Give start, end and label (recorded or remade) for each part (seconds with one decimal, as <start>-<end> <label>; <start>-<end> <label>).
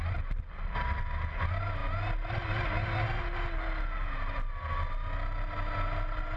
0.0-6.4 recorded